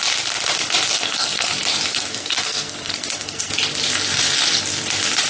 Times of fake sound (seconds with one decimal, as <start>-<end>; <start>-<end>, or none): 0.9-1.5; 1.9-3.5